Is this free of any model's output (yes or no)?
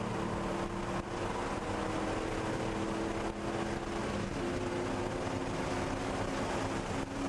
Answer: yes